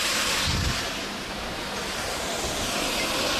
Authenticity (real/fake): real